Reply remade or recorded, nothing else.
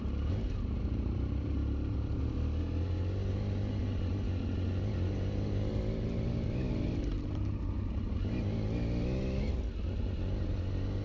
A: recorded